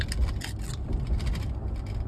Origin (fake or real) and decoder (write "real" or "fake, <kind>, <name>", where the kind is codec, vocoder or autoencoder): real